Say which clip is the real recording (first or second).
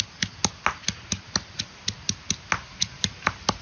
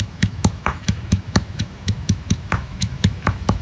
first